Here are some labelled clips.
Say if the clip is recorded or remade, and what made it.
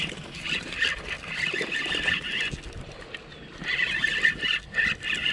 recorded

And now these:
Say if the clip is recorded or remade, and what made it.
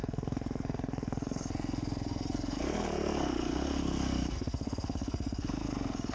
remade, codec, SNAC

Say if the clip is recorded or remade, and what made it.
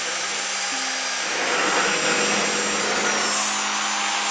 recorded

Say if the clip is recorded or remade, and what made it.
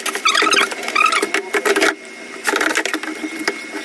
recorded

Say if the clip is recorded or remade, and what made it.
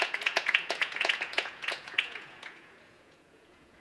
remade, vocoder, Vocos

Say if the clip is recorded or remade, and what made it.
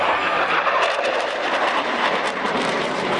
remade, vocoder, BigVGAN v2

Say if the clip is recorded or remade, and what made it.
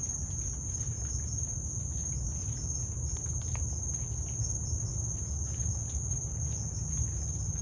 recorded